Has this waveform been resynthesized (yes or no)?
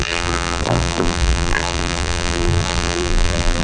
yes